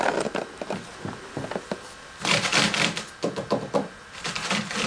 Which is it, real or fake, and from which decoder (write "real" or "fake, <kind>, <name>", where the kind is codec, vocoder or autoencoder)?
fake, vocoder, BigVGAN v2